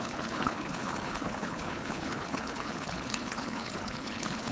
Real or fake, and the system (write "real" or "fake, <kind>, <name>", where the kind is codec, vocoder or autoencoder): fake, codec, HILCodec